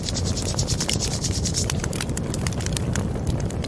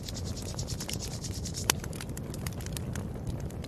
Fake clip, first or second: first